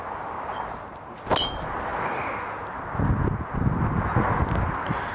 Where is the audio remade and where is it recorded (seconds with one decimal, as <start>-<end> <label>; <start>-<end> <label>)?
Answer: 0.0-5.1 recorded